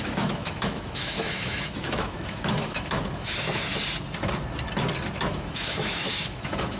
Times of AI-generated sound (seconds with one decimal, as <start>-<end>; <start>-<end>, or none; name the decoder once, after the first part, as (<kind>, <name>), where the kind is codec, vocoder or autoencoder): 0.0-3.8 (autoencoder, DAC-VAE); 5.2-6.8